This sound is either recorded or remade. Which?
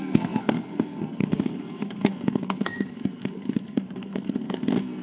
remade